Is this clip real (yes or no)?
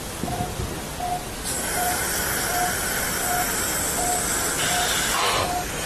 yes